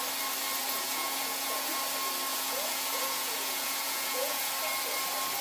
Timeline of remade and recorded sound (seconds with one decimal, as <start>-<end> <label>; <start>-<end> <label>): 0.0-0.6 recorded; 0.6-1.8 remade; 1.8-2.3 recorded; 2.3-4.5 remade; 4.5-5.4 recorded